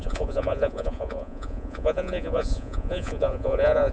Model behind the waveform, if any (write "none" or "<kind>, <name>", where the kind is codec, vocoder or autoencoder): vocoder, Vocos